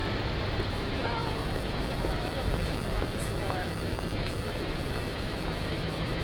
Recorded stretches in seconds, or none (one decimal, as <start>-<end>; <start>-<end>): 0.0-0.7

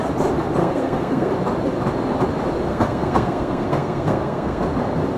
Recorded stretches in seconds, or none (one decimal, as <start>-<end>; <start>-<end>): 0.0-0.6; 1.3-2.7; 4.6-5.2

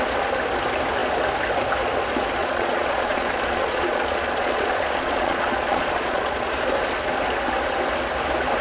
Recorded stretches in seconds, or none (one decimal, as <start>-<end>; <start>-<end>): 0.0-2.4; 6.5-8.6